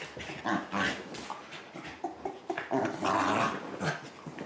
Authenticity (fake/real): real